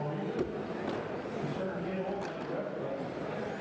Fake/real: real